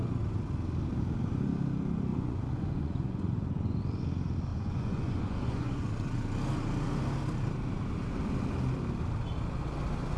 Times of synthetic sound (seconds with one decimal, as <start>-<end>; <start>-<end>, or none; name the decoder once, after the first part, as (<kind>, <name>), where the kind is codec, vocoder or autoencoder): 2.1-3.8 (vocoder, Vocos); 4.5-5.9

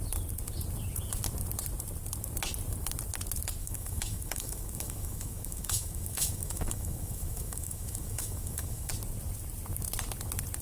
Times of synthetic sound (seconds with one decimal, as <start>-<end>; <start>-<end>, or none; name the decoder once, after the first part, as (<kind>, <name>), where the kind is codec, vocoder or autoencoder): 3.6-8.9 (autoencoder, DAC-VAE)

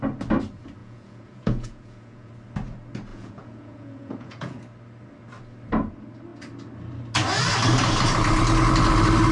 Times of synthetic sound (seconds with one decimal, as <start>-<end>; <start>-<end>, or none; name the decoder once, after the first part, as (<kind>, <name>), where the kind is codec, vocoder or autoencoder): 0.8-2.3 (vocoder, Vocos); 3.1-4.6

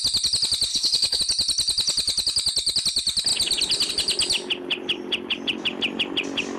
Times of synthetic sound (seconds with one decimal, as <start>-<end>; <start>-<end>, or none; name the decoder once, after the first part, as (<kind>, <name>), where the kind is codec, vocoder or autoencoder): 0.7-1.2 (codec, HILCodec)

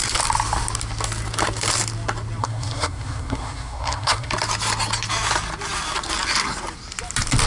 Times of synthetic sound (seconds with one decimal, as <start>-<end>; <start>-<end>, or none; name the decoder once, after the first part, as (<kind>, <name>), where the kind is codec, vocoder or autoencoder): 2.4-4.3 (codec, SNAC)

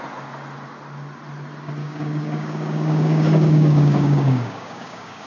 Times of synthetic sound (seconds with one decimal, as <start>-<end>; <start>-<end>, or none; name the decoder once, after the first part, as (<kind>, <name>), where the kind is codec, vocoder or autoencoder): 1.8-5.3 (codec, DAC)

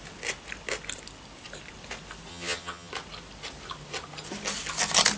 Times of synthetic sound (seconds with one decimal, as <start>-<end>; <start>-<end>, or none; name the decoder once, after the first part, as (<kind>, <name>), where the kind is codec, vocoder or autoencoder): 2.3-2.9 (vocoder, HiFi-GAN)

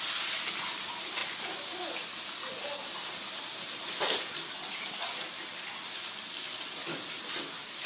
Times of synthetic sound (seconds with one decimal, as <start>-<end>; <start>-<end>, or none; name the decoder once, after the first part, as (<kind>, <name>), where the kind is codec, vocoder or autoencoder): none